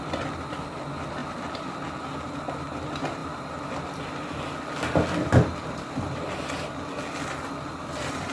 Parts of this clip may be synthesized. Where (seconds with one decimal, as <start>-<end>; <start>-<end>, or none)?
none